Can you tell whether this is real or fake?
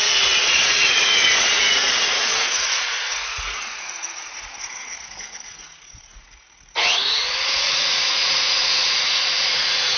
fake